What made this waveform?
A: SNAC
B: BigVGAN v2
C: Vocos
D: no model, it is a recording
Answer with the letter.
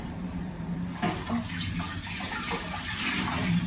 D